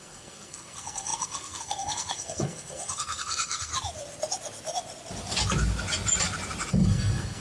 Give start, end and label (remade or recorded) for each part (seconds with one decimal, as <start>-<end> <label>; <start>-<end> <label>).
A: 0.0-3.7 remade; 3.7-6.7 recorded; 6.7-7.4 remade